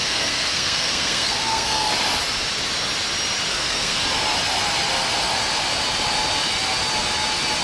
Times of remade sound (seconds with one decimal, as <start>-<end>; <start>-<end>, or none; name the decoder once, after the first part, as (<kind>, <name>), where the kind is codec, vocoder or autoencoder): 0.0-1.9 (codec, SNAC); 3.5-4.0